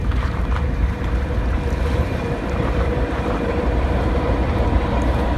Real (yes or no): no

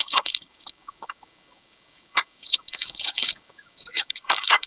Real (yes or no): no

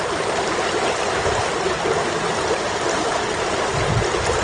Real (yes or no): yes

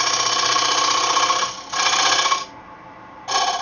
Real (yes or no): yes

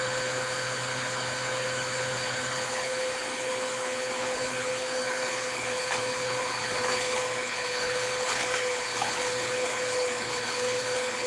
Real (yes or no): no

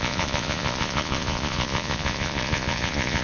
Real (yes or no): no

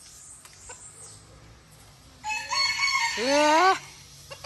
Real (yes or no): yes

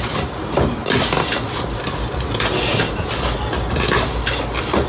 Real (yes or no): yes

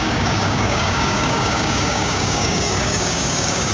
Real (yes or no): no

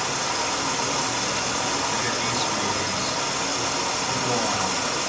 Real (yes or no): yes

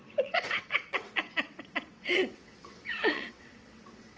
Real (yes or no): no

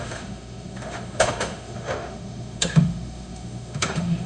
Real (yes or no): no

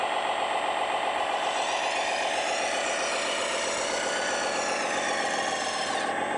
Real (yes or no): yes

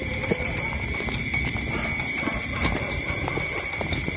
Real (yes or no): yes